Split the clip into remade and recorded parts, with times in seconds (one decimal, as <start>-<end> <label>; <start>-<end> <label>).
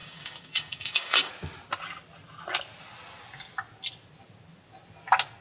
0.0-1.3 remade; 1.3-5.4 recorded